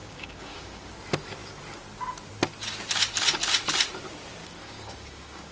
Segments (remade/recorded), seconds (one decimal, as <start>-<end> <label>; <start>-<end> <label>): 0.0-0.9 remade; 0.9-4.4 recorded; 4.4-5.5 remade